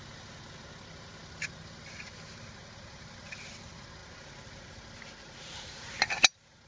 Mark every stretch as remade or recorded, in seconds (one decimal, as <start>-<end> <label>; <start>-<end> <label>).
0.0-6.7 recorded

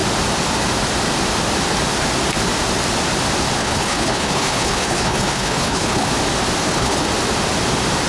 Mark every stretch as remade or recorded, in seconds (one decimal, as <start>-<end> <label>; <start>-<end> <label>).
0.0-3.6 recorded; 3.6-6.1 remade; 6.1-6.6 recorded; 6.6-7.1 remade; 7.1-8.1 recorded

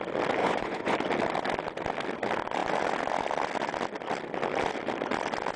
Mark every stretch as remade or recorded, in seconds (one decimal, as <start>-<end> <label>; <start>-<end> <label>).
0.0-0.4 recorded; 0.4-1.0 remade; 1.0-5.6 recorded

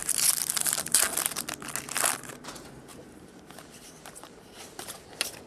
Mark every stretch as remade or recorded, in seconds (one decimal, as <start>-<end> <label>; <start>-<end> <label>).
0.0-2.9 recorded; 2.9-5.1 remade; 5.1-5.5 recorded

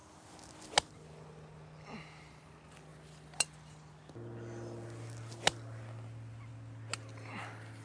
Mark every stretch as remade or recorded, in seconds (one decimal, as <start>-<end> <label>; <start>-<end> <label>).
0.0-7.8 recorded

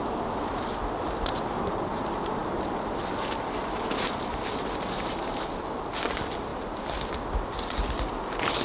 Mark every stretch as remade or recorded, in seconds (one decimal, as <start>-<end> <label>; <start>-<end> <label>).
0.0-6.5 recorded; 6.5-7.0 remade; 7.0-8.6 recorded